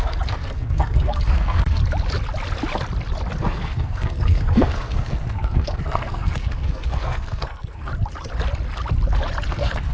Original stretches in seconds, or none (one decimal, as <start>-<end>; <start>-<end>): 1.8-3.4; 7.9-9.5